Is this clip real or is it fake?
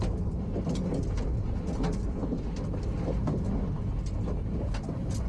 real